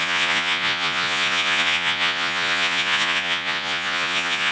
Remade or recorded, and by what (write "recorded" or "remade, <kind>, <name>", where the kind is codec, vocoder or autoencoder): remade, vocoder, Vocos